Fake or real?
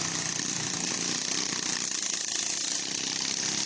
real